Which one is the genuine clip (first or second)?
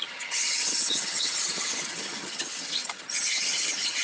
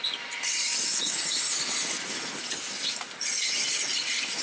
second